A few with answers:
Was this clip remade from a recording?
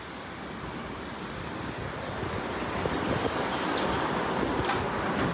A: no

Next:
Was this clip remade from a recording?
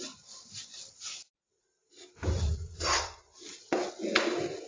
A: no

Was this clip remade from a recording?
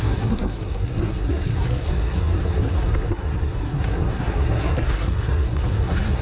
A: yes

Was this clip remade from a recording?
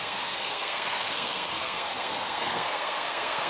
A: yes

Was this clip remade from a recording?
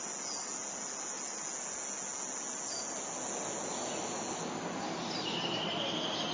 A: no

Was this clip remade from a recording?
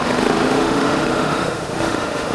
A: yes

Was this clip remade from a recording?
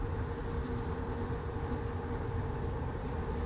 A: no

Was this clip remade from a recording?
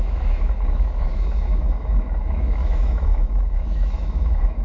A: yes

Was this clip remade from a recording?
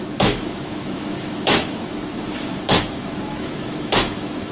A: yes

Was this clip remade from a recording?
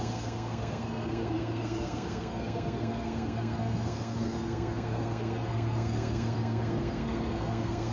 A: yes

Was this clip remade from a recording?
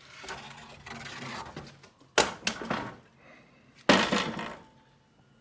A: no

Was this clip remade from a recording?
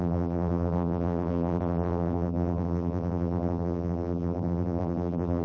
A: yes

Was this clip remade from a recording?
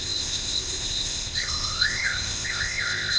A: yes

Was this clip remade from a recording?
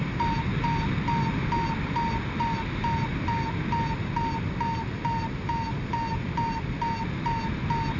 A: no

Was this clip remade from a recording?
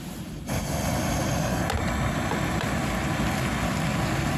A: no